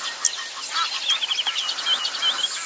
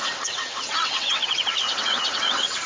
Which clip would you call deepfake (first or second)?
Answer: second